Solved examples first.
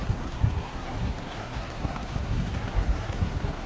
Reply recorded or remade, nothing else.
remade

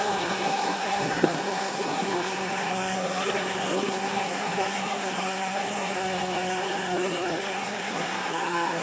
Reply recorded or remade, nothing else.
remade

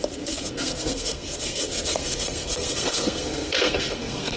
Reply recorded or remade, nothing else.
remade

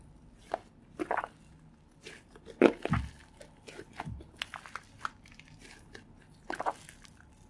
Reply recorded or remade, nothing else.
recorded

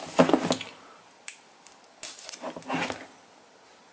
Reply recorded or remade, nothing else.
recorded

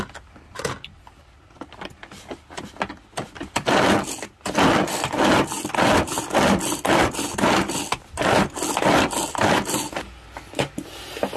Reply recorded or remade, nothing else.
recorded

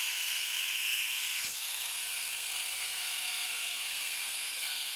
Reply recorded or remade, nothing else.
remade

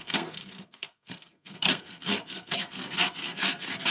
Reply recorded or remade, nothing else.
remade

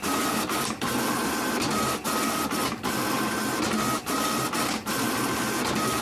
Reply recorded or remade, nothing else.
recorded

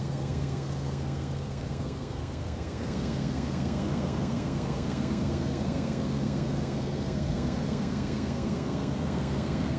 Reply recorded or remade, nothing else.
remade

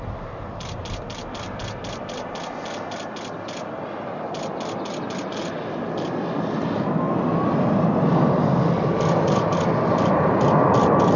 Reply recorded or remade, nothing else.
recorded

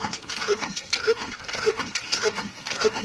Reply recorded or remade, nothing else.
remade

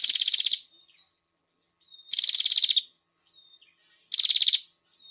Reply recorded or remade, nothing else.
recorded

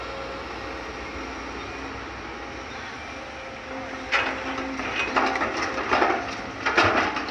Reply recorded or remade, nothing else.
recorded